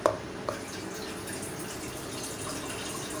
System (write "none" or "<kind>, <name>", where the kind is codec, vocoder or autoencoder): none